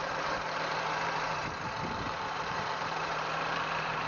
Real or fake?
fake